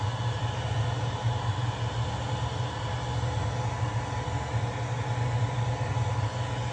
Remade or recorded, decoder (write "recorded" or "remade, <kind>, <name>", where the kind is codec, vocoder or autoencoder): recorded